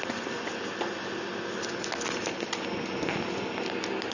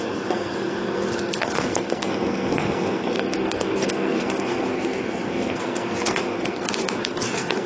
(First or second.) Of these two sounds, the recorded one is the first